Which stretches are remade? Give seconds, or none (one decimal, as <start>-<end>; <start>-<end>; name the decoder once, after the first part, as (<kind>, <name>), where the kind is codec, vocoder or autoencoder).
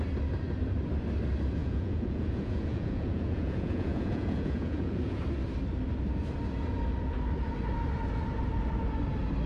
1.6-5.2 (vocoder, Vocos)